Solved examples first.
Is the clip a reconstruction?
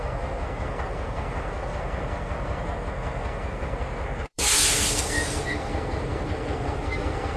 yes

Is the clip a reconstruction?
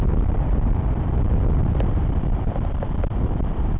no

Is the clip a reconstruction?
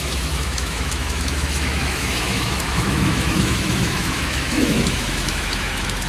yes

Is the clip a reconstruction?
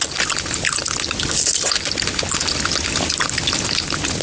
no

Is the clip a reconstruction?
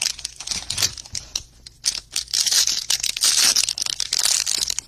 yes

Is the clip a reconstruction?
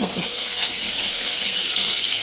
yes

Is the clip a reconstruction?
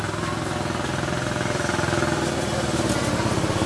no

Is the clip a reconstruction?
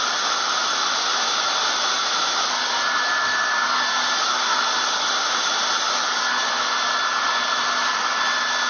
no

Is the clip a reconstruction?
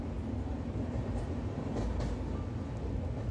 no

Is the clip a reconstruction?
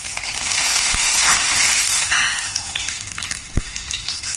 yes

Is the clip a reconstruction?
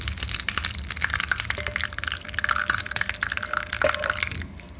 no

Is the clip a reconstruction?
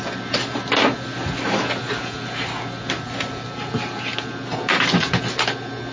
no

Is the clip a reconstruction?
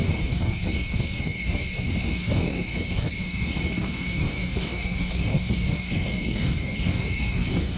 yes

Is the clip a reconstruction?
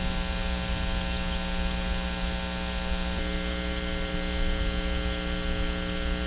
no